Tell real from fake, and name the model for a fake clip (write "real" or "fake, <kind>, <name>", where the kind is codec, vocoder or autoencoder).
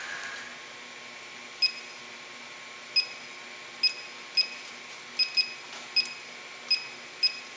real